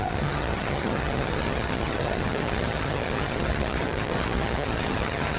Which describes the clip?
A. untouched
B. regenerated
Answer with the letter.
B